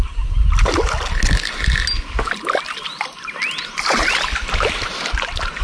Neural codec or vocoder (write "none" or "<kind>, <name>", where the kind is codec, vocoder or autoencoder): none